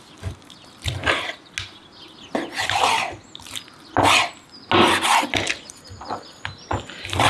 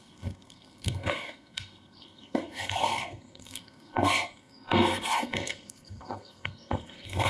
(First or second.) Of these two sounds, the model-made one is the second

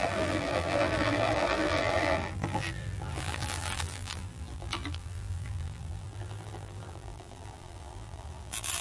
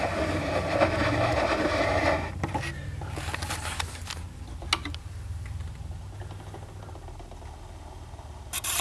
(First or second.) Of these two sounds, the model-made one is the first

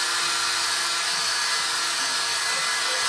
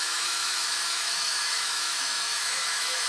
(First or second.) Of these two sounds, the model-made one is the second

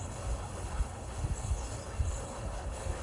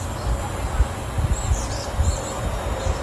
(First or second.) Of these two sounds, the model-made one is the first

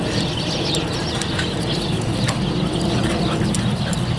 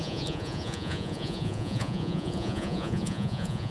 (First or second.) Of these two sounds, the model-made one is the second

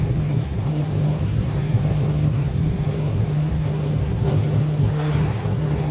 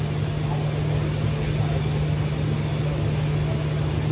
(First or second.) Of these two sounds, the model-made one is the first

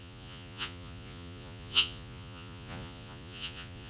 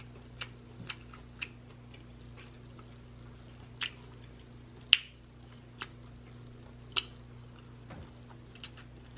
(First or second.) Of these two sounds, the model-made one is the first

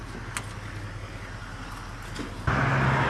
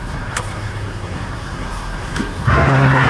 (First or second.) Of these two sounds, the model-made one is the second